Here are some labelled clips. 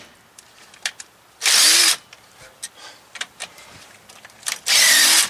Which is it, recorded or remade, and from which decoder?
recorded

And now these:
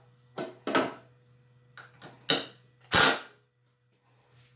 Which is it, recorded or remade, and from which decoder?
recorded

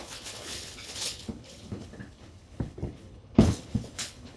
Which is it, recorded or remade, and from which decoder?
remade, codec, HILCodec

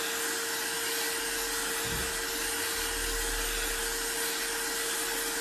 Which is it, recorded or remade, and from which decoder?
recorded